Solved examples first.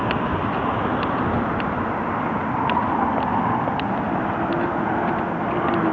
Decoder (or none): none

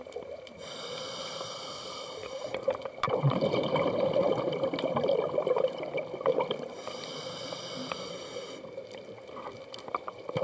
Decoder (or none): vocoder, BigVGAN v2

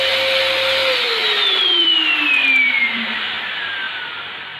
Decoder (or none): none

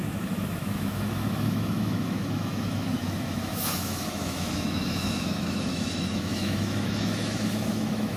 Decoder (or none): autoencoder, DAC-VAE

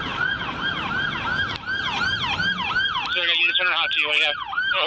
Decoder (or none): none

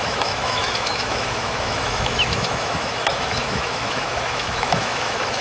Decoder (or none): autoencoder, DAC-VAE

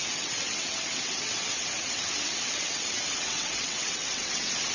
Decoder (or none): vocoder, WaveNeXt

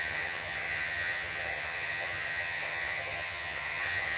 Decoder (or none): vocoder, HiFi-GAN